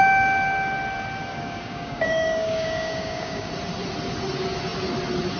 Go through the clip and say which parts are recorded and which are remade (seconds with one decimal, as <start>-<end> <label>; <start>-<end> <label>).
0.0-1.3 recorded; 1.3-3.5 remade; 3.5-5.4 recorded